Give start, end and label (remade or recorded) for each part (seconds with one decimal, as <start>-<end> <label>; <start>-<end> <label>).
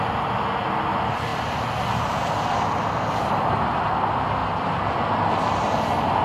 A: 0.0-6.2 recorded